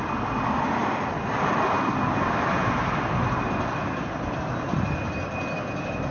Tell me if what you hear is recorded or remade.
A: recorded